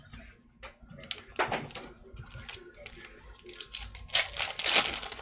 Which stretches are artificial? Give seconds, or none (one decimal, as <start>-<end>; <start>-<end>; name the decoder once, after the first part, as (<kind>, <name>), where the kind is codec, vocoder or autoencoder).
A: none